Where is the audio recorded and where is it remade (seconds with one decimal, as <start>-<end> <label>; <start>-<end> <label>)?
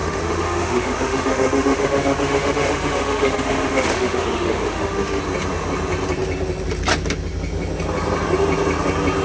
0.0-5.2 remade; 5.2-9.2 recorded